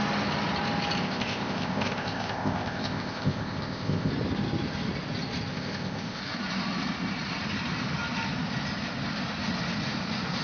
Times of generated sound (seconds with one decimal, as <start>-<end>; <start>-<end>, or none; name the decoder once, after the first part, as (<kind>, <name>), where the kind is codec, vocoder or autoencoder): 1.0-4.1 (codec, ZipCodec); 5.5-6.2